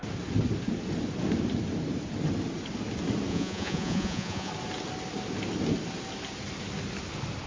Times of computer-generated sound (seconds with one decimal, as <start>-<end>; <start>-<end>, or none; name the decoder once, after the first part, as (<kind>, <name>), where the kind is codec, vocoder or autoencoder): 3.3-4.5 (vocoder, Vocos)